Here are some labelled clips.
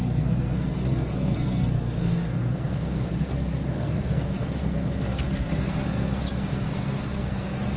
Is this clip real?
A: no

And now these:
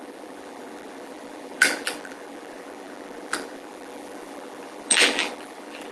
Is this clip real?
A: no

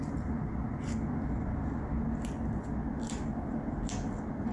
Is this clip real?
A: yes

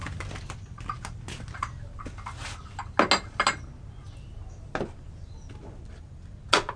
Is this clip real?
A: yes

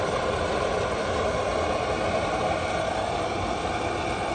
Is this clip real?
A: yes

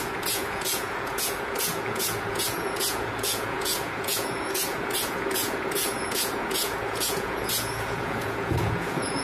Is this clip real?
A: no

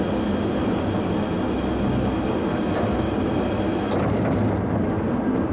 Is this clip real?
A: yes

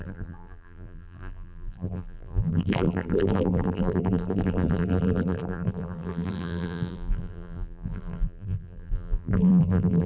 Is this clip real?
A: no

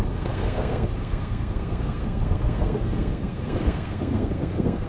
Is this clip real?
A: no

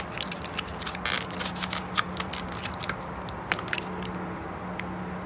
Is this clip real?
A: yes